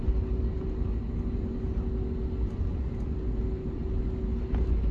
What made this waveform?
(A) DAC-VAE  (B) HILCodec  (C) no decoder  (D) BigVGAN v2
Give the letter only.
C